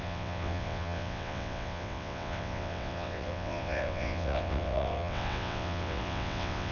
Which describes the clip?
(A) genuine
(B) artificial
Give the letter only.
B